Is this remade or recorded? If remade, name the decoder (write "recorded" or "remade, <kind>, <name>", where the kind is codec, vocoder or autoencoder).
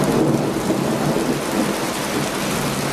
recorded